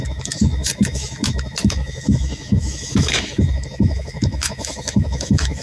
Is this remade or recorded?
remade